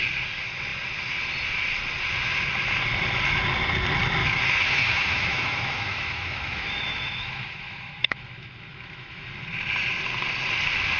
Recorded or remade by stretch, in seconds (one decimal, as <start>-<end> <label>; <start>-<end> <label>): 0.0-4.2 recorded; 4.2-9.3 remade; 9.3-11.0 recorded